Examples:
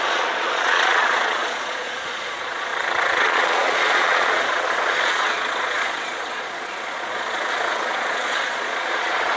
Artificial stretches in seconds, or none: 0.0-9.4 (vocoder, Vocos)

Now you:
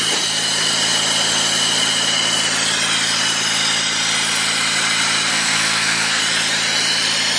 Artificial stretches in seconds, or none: 5.3-6.2 (codec, SNAC)

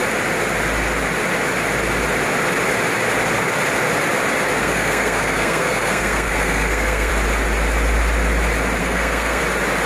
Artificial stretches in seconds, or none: 4.6-7.1 (codec, SNAC); 8.8-9.4

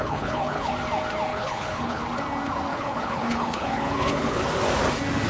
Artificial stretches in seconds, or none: 0.0-0.7 (codec, HILCodec); 1.3-2.0; 2.7-4.4

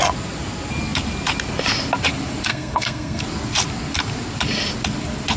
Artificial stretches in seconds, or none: 2.5-3.2 (codec, SNAC)